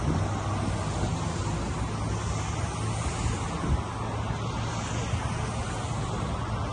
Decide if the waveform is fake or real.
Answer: real